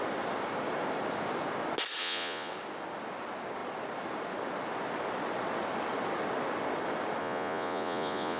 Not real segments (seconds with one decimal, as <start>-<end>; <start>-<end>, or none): 2.0-2.5; 7.2-8.4